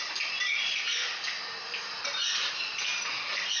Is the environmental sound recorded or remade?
recorded